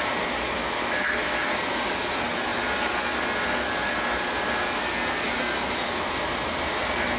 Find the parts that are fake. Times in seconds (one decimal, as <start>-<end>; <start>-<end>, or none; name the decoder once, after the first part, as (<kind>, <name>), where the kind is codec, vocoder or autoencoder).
none